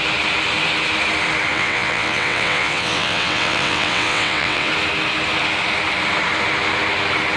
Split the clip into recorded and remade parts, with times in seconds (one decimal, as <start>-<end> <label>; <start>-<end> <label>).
0.0-1.5 recorded; 1.5-4.7 remade; 4.7-7.4 recorded